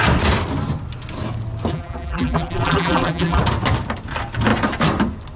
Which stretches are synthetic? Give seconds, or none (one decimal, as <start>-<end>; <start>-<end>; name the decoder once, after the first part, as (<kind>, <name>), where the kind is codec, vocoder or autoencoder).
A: 1.7-3.4 (vocoder, BigVGAN v2)